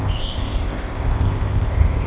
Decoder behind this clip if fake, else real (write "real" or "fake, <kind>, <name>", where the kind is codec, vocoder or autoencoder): fake, codec, ZipCodec